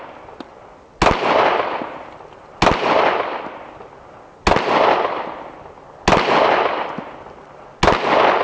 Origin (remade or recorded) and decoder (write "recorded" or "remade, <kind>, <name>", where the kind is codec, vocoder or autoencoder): recorded